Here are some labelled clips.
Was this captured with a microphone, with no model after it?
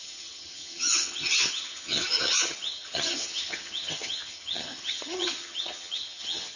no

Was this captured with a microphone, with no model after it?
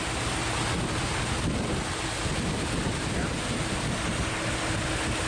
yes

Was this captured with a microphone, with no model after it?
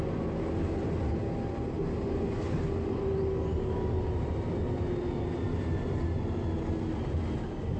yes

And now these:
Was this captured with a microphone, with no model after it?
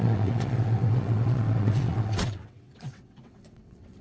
no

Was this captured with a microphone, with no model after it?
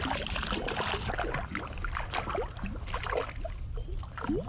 yes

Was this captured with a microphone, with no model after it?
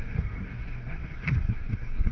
no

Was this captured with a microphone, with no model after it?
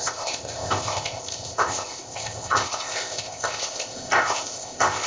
no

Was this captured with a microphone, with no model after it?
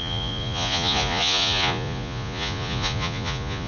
no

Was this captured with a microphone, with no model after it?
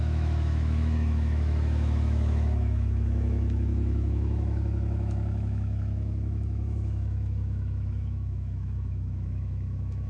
no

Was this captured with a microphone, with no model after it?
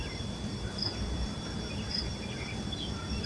yes